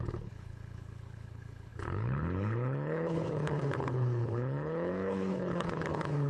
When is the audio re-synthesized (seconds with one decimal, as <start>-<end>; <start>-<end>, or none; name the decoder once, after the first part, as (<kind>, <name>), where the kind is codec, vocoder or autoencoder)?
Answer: 0.0-6.3 (codec, HILCodec)